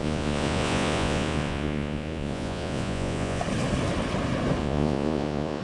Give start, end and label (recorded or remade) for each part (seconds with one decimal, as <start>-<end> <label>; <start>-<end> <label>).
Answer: 0.0-3.4 remade; 3.4-4.6 recorded; 4.6-5.6 remade